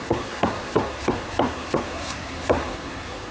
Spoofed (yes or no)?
yes